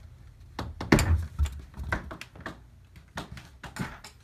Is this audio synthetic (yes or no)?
no